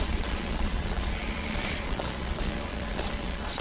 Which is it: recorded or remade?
remade